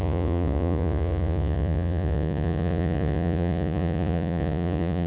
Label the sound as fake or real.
fake